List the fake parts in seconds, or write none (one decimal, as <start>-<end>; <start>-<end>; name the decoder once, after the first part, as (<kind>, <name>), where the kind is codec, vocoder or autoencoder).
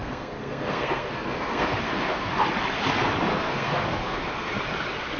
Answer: 0.0-2.3 (codec, SNAC); 3.3-4.5